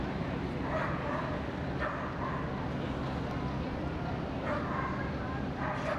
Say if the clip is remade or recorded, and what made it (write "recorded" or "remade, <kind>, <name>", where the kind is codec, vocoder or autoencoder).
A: recorded